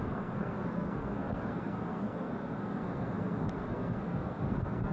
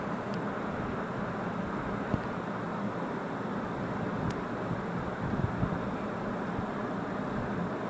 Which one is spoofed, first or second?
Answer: first